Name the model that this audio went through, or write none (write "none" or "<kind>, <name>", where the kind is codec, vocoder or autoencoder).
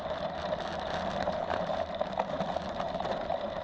vocoder, BigVGAN v2